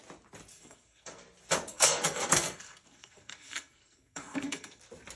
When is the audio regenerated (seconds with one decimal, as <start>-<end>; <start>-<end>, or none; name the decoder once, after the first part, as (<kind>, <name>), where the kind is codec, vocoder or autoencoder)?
0.5-1.2 (codec, SNAC); 1.7-4.8